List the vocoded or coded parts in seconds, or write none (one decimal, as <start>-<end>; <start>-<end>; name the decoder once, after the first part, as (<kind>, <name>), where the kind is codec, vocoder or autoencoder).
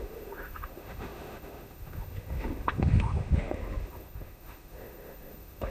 0.0-5.7 (autoencoder, DAC-VAE)